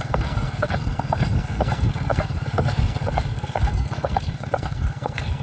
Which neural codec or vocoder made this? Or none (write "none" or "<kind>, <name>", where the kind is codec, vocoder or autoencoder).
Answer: codec, SNAC